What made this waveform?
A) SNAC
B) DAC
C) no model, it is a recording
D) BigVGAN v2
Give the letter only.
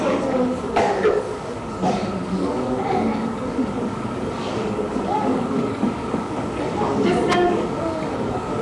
B